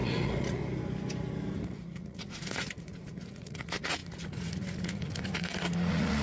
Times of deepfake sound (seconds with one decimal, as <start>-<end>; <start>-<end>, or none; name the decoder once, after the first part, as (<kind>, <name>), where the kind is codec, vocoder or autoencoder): 0.0-0.6 (vocoder, Vocos); 1.6-6.2